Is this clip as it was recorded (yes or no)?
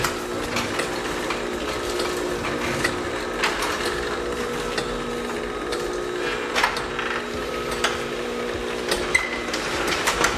yes